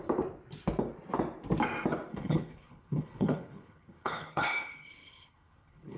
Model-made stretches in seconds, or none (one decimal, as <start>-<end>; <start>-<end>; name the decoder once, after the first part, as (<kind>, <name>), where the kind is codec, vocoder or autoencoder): 2.1-6.0 (codec, HILCodec)